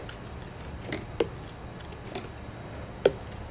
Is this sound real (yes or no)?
yes